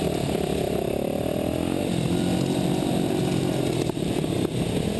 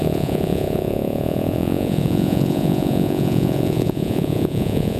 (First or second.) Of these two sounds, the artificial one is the second